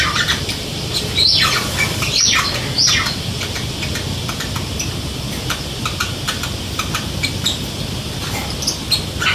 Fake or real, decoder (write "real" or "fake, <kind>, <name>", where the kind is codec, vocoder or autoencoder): real